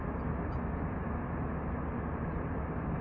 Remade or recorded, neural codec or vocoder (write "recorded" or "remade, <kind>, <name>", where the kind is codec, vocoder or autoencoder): recorded